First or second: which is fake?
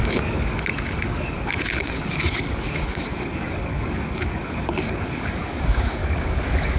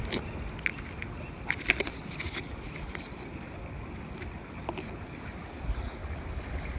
first